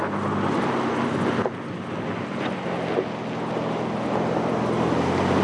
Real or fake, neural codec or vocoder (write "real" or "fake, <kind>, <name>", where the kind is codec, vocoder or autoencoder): real